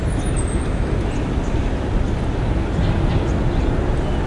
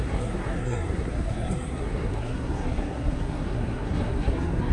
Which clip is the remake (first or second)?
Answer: second